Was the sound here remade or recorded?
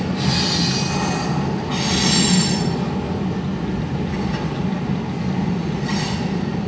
recorded